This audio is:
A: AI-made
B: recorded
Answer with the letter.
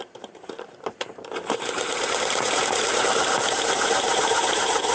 A